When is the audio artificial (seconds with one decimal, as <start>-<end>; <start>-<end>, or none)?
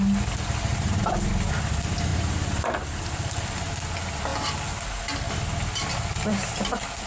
0.7-1.3; 2.1-3.0